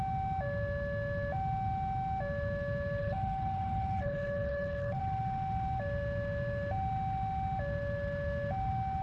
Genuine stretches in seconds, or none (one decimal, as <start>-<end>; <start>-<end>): 0.0-3.0; 5.0-9.0